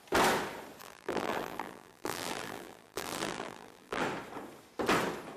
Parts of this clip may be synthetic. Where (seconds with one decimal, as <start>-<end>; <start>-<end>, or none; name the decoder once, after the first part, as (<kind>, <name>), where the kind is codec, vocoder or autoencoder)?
0.8-4.0 (vocoder, BigVGAN v2)